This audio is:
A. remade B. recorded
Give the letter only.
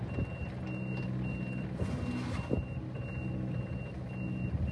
B